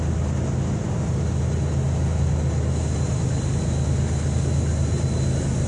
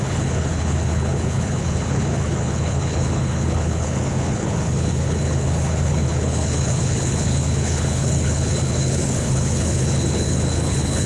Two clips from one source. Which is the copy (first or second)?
second